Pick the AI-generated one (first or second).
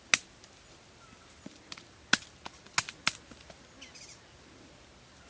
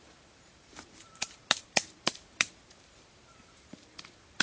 second